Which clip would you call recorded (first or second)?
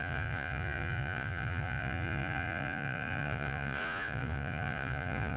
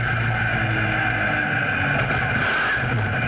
second